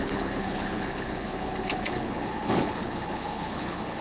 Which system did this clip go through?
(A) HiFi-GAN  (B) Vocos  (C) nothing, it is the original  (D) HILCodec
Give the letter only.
D